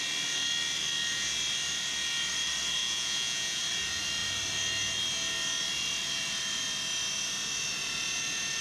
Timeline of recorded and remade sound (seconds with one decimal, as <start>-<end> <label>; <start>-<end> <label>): 0.0-2.8 recorded; 2.8-3.6 remade; 3.6-8.6 recorded